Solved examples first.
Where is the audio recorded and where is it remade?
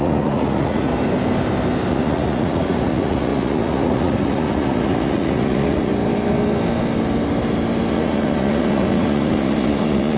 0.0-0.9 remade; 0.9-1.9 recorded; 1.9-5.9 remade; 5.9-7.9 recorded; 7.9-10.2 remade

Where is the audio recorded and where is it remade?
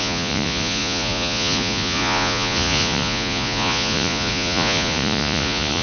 0.0-5.8 remade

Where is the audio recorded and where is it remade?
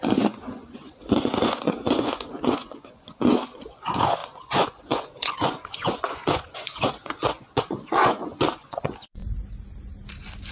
0.0-9.2 remade; 9.2-10.5 recorded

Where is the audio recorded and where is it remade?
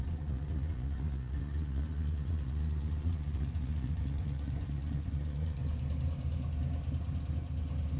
0.0-5.6 remade; 5.6-8.0 recorded